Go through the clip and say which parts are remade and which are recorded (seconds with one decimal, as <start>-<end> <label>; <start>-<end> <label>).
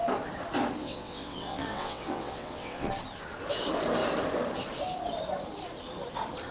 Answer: 0.0-0.8 recorded; 0.8-2.9 remade; 2.9-6.5 recorded